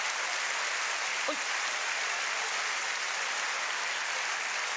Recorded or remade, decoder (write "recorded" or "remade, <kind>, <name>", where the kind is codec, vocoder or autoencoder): recorded